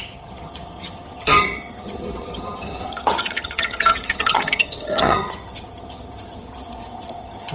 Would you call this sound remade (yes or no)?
yes